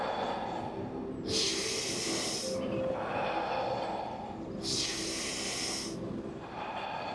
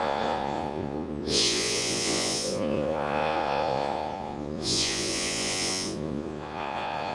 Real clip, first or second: first